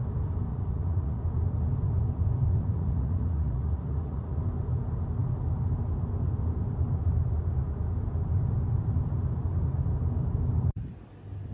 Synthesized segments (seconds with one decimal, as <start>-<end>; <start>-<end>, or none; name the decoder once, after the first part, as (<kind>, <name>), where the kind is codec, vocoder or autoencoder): 0.5-1.2 (vocoder, Vocos); 2.5-4.4